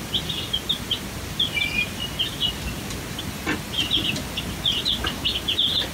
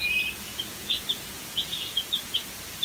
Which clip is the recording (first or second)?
first